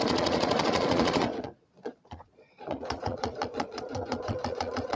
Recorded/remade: remade